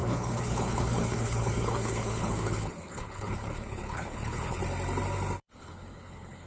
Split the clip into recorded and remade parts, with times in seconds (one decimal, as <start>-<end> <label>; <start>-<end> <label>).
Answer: 0.0-4.6 remade; 4.6-5.4 recorded; 5.4-6.5 remade